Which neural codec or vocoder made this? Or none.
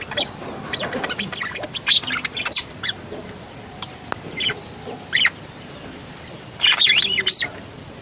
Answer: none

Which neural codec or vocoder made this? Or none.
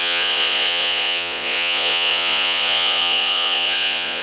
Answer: vocoder, Vocos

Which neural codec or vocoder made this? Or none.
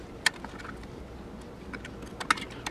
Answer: none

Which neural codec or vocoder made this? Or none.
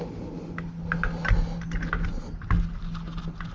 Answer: none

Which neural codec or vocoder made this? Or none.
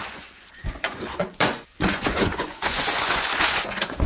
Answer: vocoder, Vocos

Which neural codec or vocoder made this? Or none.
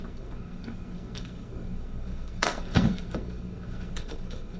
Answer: codec, SNAC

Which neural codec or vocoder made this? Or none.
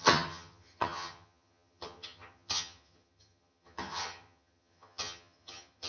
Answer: vocoder, HiFi-GAN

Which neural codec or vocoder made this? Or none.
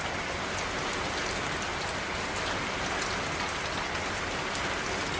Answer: none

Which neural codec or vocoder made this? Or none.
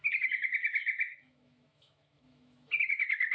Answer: autoencoder, DAC-VAE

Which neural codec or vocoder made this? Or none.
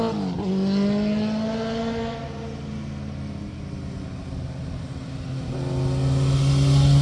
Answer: none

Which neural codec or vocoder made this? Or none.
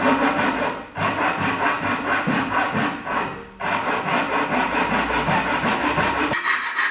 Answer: none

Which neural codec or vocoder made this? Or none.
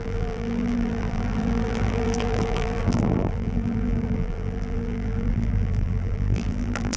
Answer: vocoder, BigVGAN v2